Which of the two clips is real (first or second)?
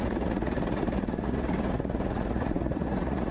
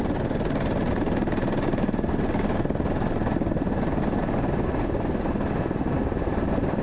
second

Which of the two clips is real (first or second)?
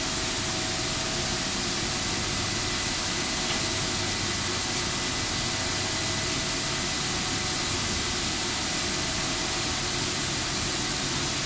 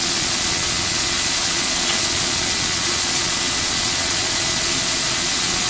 first